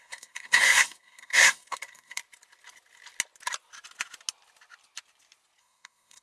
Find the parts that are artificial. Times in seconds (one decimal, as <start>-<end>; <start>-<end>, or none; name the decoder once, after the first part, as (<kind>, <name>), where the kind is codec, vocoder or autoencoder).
0.0-2.2 (codec, SNAC); 5.6-6.2